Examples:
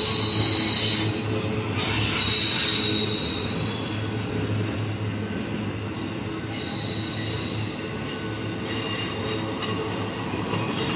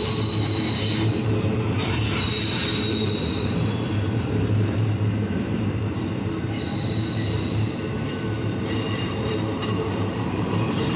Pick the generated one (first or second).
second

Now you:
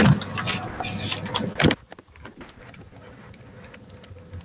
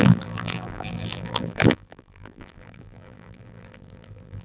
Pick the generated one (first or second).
second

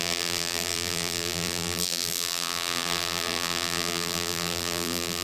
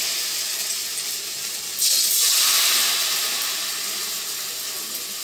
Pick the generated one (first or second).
first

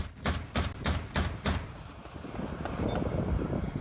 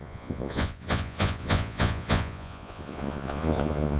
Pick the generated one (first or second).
second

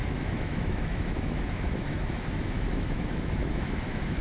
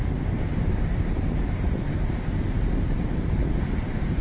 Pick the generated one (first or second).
first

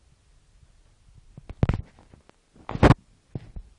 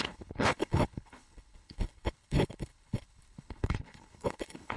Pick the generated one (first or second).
second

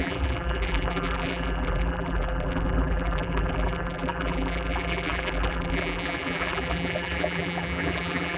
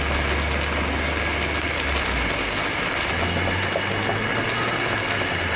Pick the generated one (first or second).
first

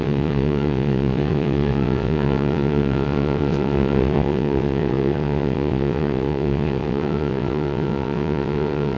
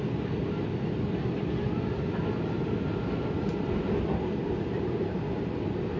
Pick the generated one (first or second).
first